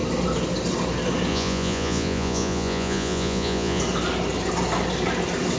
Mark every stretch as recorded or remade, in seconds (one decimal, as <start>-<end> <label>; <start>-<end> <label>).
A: 0.0-1.3 recorded; 1.3-3.8 remade; 3.8-5.6 recorded

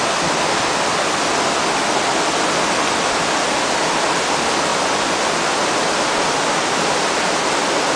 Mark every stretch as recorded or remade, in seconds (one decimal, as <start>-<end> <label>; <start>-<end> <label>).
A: 0.0-4.7 recorded; 4.7-5.4 remade; 5.4-8.0 recorded